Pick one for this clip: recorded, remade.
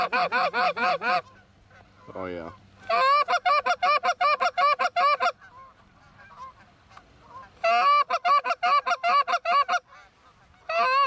recorded